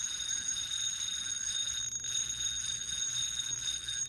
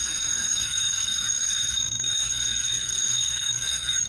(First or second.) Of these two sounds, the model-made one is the second